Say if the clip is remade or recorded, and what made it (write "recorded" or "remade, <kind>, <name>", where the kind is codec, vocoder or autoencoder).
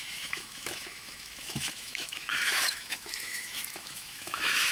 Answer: remade, autoencoder, DAC-VAE